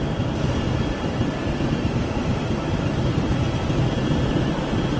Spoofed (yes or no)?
no